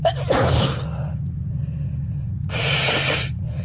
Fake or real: real